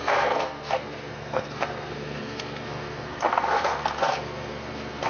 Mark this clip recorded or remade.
remade